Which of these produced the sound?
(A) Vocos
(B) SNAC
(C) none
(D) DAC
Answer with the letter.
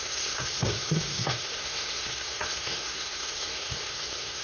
B